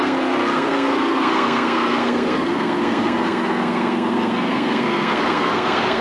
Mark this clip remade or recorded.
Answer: remade